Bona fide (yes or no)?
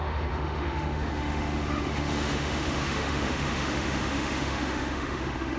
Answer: no